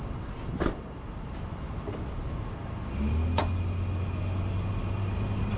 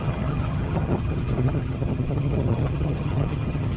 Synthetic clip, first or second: second